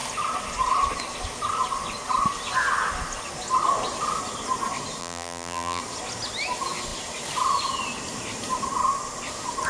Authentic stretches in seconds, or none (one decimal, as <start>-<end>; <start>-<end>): 0.0-5.0; 5.8-9.7

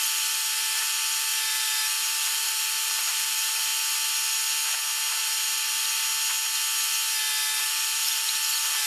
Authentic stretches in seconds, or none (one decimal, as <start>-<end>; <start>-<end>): 3.7-5.2; 6.1-7.6

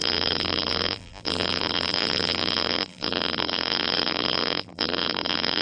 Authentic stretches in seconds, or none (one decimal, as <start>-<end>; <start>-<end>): none

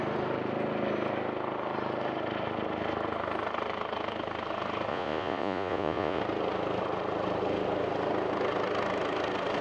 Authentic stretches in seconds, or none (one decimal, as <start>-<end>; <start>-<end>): 0.0-4.9; 6.2-9.6

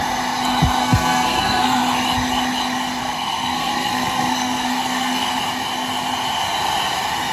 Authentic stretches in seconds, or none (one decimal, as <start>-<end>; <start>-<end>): 0.0-0.8; 1.8-3.0; 5.4-7.3

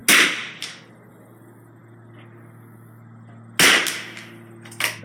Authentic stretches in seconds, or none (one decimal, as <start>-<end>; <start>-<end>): 0.0-5.0

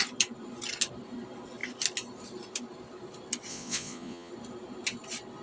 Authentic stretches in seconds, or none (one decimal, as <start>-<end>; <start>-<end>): 0.0-3.5; 4.3-5.4